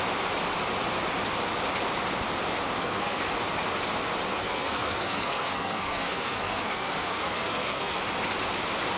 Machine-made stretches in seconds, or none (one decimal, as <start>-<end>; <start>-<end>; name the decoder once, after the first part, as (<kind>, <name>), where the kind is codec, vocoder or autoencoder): 2.8-3.3 (codec, SNAC); 4.3-8.0